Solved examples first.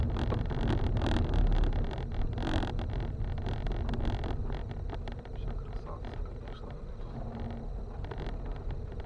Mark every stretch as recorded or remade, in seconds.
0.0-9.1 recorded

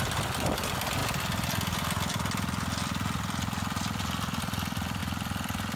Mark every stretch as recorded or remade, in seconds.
0.0-5.8 recorded